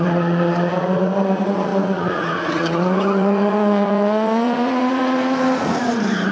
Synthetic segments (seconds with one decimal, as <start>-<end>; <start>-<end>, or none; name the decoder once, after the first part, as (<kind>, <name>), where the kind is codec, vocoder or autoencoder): 0.0-6.3 (vocoder, Vocos)